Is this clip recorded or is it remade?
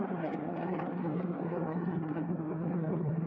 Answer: remade